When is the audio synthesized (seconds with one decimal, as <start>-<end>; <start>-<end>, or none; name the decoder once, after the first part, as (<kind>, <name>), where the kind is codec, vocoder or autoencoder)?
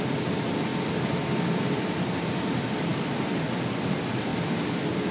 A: 0.0-4.3 (vocoder, BigVGAN v2)